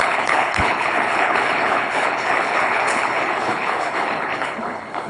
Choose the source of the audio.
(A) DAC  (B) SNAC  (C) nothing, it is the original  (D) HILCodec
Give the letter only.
D